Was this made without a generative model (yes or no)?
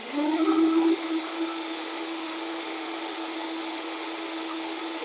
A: no